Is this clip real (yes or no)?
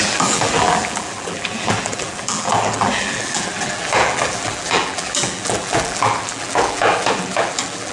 no